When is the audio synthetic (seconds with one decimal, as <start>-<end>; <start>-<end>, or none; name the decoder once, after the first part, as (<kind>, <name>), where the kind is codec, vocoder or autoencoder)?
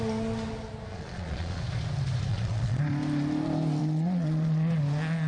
0.9-1.6 (vocoder, Vocos); 2.3-2.8; 3.8-4.7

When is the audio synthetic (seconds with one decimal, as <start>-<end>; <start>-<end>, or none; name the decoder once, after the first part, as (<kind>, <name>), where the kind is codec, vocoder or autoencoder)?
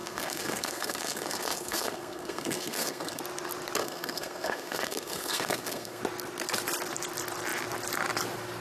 0.0-3.2 (codec, SNAC); 3.8-6.0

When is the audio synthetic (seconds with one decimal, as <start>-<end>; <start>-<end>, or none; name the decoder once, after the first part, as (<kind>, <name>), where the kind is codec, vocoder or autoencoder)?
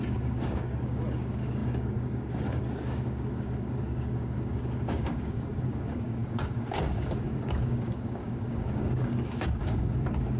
0.0-10.4 (codec, DAC)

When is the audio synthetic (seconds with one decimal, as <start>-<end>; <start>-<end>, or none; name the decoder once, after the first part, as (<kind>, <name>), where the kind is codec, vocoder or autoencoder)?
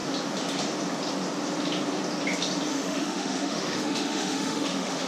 2.7-5.1 (autoencoder, DAC-VAE)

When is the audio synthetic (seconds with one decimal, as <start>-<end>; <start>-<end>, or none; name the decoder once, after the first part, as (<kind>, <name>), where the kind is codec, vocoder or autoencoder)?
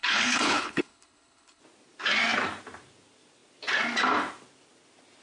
0.0-1.6 (codec, HILCodec)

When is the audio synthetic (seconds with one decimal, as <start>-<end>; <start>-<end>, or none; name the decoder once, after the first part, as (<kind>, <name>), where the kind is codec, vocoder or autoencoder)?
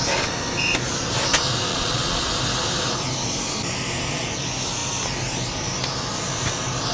1.7-2.3 (vocoder, Vocos)